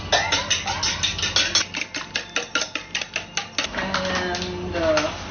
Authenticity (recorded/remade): recorded